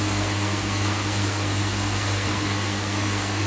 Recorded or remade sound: remade